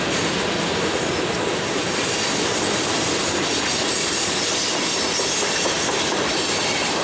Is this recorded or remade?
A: remade